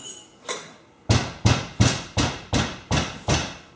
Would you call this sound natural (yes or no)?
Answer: yes